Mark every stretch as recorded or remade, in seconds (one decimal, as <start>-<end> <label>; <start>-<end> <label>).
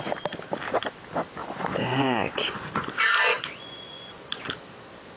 0.0-1.4 recorded; 1.4-4.5 remade; 4.5-5.2 recorded